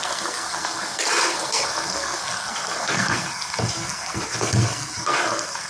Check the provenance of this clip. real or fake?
fake